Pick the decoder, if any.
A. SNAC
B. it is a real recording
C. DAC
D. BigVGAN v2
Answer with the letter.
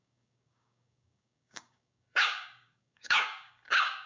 C